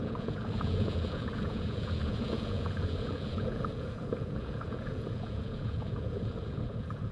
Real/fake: fake